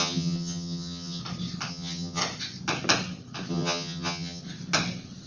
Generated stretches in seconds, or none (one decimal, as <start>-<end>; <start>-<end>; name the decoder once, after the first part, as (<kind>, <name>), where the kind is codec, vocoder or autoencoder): 0.0-1.2 (vocoder, HiFi-GAN); 1.7-2.2; 3.5-4.4

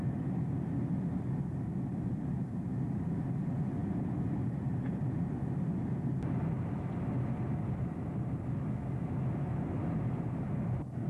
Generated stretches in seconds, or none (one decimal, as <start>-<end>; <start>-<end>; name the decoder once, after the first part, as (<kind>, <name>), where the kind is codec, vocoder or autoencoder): none

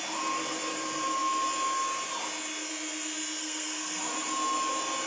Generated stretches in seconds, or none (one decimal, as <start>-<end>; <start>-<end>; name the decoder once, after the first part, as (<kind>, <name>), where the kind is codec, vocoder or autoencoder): 3.4-4.0 (codec, SNAC)

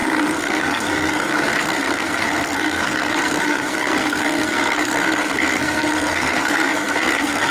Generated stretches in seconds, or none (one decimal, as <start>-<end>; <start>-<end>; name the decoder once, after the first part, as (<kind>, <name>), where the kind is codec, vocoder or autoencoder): 0.0-7.5 (codec, SNAC)

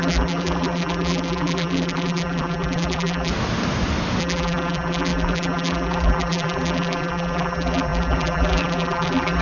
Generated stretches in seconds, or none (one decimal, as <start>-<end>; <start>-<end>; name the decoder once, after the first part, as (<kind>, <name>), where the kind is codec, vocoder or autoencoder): 0.0-3.3 (vocoder, BigVGAN v2); 4.2-9.4